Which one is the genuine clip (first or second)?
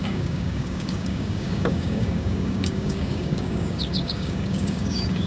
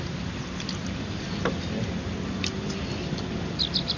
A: second